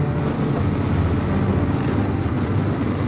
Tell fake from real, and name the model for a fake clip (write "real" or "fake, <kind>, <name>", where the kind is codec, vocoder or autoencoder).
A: real